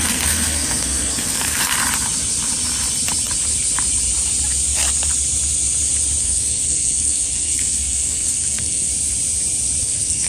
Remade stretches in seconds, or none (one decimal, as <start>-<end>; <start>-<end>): 0.0-1.7; 6.2-8.9; 9.8-10.3